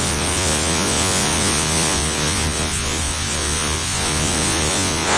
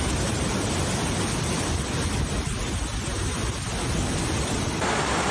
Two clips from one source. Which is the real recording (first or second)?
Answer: second